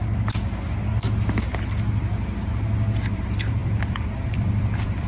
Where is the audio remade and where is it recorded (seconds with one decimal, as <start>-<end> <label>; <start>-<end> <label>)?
0.0-3.1 recorded; 3.1-5.1 remade